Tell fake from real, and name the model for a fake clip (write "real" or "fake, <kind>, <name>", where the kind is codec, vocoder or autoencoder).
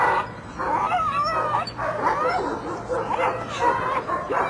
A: real